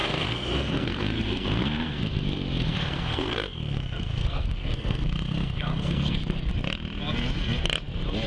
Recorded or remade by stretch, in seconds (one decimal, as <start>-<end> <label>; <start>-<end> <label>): 0.0-6.5 remade; 6.5-8.3 recorded